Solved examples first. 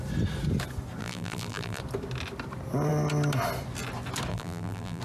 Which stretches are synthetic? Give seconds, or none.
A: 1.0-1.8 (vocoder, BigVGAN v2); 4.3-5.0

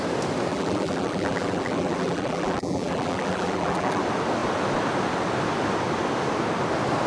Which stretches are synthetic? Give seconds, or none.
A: 0.5-4.0 (vocoder, BigVGAN v2)